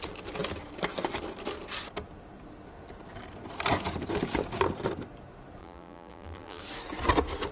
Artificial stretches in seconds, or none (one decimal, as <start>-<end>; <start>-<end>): 5.6-6.6